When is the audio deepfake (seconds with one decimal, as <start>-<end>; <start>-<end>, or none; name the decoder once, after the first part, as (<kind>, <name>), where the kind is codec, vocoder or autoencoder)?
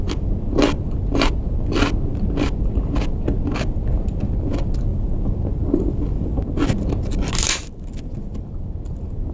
none